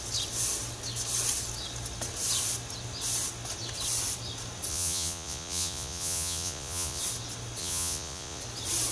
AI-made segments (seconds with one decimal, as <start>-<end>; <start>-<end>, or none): 4.7-7.0; 7.6-8.4